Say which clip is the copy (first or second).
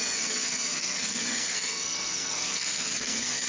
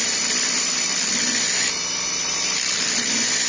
first